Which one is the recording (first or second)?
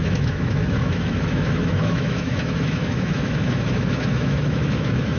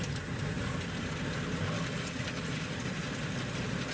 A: second